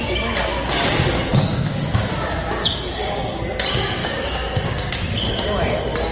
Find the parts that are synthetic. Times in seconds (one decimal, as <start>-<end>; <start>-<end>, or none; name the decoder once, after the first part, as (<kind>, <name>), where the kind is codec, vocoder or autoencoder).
1.3-2.1 (codec, DAC); 2.6-3.4; 4.0-4.9